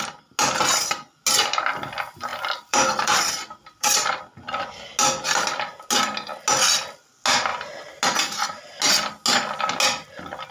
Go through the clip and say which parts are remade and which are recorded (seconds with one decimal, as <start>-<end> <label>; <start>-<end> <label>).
0.0-2.3 recorded; 2.3-4.2 remade; 4.2-10.5 recorded